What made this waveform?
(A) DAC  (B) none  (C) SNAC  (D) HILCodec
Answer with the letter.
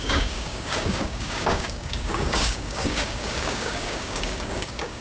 A